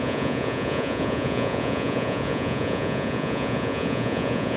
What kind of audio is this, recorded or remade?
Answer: remade